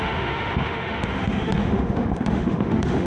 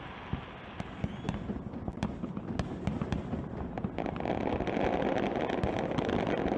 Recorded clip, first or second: second